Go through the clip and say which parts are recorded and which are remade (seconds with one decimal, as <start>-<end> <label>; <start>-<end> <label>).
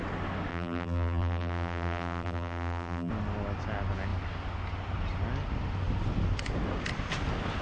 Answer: 0.0-0.5 recorded; 0.5-3.1 remade; 3.1-7.6 recorded